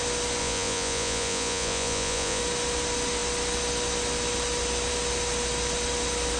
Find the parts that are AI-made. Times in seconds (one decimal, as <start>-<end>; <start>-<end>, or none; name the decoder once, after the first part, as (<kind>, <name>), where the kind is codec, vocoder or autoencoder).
0.4-2.4 (vocoder, Vocos)